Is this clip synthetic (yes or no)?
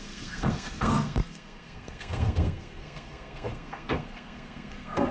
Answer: yes